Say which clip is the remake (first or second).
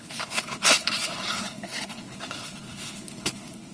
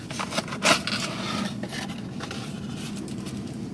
first